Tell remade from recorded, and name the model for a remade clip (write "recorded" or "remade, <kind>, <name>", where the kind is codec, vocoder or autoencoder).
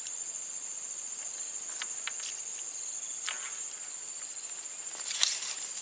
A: recorded